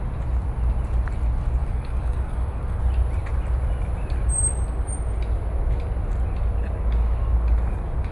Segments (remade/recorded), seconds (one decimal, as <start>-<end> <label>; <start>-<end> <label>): 0.0-1.6 recorded; 1.6-2.8 remade; 2.8-8.1 recorded